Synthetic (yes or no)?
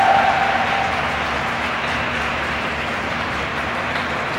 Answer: yes